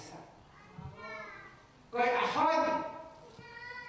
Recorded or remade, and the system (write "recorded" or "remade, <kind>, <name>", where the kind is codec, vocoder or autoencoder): recorded